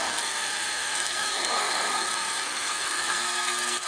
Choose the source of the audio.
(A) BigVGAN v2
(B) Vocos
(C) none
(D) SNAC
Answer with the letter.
D